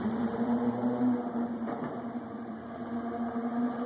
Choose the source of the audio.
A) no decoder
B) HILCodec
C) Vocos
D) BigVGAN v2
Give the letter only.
D